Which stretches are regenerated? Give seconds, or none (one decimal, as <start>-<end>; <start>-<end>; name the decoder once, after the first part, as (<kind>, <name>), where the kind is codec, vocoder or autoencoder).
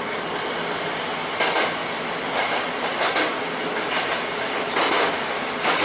none